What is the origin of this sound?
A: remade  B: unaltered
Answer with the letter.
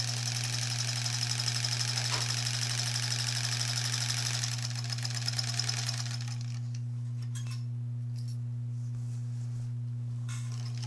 B